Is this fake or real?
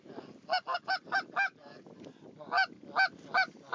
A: real